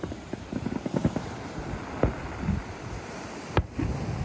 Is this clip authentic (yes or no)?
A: yes